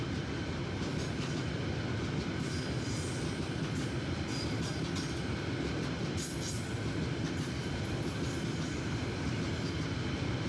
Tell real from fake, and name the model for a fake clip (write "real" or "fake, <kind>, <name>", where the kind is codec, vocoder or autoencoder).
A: real